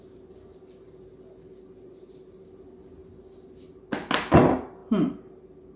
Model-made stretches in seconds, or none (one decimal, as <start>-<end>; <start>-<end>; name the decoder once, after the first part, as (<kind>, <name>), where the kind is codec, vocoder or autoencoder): none